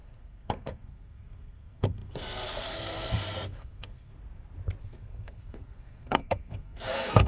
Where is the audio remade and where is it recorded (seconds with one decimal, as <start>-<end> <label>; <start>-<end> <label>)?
0.0-4.1 remade; 4.1-4.8 recorded; 4.8-7.3 remade